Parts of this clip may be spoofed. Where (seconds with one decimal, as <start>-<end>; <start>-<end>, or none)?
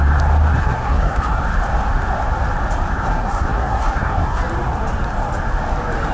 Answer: 0.6-1.4; 3.0-4.4